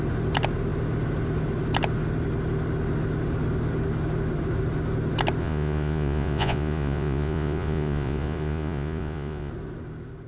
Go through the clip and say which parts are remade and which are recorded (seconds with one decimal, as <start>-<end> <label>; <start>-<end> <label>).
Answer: 0.0-5.4 recorded; 5.4-9.5 remade; 9.5-10.3 recorded